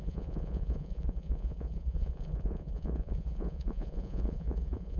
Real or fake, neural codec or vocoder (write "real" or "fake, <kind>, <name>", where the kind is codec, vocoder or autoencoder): fake, vocoder, Vocos